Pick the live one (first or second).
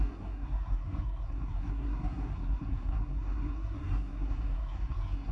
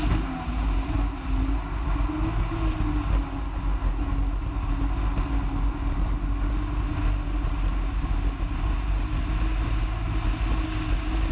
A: second